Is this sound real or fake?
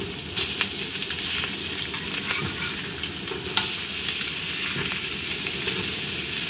real